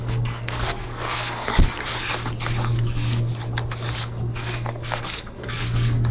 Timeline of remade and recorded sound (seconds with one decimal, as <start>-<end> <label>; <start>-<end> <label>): 0.0-1.5 remade; 1.5-2.7 recorded; 2.7-3.3 remade; 3.3-4.0 recorded; 4.0-6.1 remade